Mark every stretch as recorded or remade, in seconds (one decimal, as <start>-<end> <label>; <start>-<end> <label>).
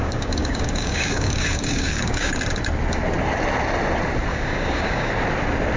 0.0-2.3 remade; 2.3-4.3 recorded; 4.3-5.1 remade; 5.1-5.8 recorded